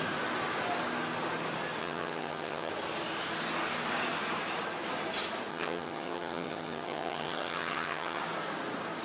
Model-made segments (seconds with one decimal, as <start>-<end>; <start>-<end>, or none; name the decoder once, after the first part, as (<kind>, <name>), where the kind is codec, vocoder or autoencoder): 1.8-2.7 (vocoder, HiFi-GAN); 5.5-8.2